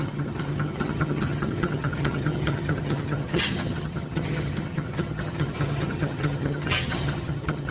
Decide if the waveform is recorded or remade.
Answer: remade